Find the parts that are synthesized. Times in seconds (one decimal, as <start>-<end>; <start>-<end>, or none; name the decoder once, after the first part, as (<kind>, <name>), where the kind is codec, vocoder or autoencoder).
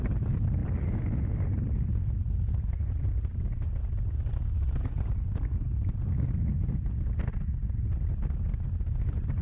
none